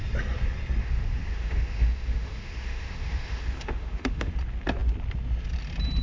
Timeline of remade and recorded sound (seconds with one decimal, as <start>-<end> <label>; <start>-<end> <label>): 0.0-0.8 recorded; 0.8-4.3 remade; 4.3-6.0 recorded